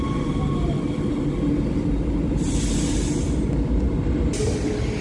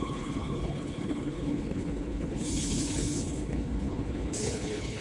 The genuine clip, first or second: first